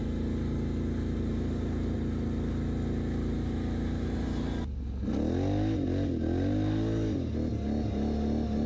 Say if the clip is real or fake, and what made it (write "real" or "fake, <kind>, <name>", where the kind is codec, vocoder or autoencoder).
real